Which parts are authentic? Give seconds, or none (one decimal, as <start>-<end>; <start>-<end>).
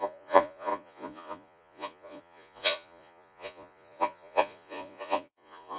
none